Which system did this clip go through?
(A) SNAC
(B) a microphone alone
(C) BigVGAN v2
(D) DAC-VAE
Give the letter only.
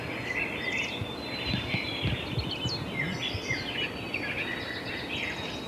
B